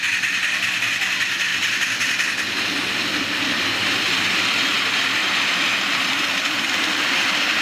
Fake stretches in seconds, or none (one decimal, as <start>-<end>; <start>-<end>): none